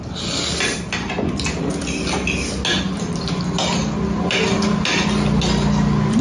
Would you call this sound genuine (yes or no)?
yes